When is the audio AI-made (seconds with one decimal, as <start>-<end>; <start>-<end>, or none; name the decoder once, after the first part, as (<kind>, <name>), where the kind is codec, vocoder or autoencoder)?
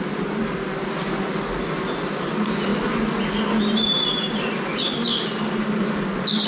none